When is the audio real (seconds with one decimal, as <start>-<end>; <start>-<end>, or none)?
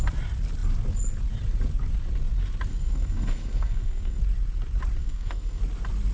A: 0.0-2.7; 4.2-5.0; 5.6-6.1